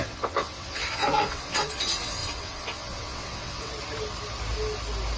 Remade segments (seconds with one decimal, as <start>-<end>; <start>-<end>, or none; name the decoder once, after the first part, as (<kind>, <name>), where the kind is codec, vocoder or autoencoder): 0.0-3.7 (vocoder, WaveNeXt)